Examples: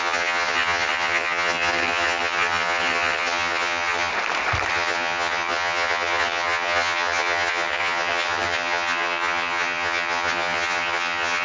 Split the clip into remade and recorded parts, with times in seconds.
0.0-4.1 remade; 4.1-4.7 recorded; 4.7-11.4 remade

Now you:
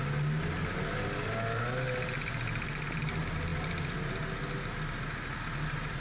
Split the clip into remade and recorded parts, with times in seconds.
0.0-6.0 recorded